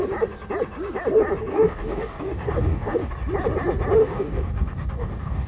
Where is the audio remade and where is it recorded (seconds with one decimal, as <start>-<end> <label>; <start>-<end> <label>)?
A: 0.0-1.5 recorded; 1.5-3.1 remade; 3.1-4.0 recorded; 4.0-5.5 remade